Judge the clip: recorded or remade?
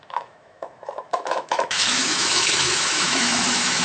remade